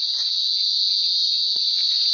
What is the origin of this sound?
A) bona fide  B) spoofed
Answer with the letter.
A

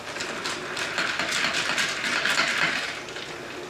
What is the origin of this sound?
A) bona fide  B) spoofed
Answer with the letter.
A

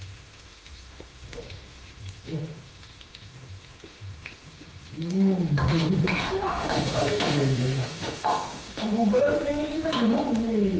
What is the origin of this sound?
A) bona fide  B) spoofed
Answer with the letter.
B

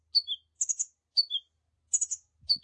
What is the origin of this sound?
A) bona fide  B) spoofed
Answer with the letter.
A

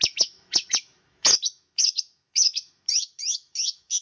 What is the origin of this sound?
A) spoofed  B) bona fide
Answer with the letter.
A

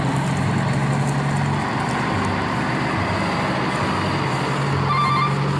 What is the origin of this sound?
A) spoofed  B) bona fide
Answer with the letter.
B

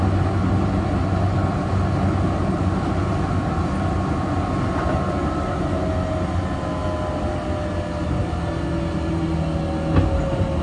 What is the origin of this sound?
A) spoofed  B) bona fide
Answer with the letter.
B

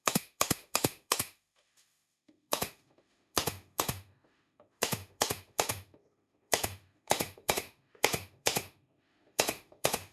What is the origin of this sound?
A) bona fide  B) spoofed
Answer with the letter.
B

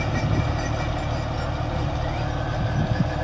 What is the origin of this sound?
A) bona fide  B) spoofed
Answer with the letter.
A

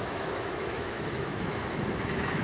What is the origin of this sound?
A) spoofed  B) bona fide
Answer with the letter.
A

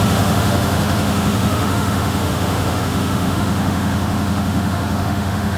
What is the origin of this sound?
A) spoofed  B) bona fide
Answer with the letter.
A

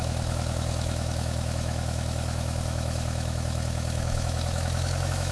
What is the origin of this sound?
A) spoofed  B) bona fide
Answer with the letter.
A